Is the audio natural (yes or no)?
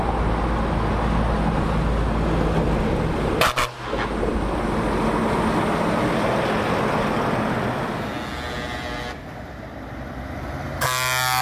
yes